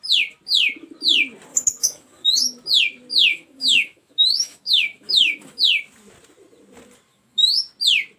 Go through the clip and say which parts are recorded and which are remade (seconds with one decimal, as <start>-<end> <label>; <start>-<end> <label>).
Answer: 0.0-1.5 recorded; 1.5-2.3 remade; 2.3-3.3 recorded; 3.3-5.6 remade; 5.6-7.1 recorded; 7.1-7.6 remade; 7.6-8.2 recorded